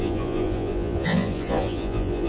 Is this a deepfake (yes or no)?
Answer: yes